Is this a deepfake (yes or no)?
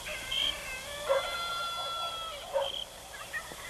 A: no